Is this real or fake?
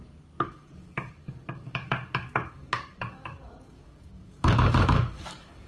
fake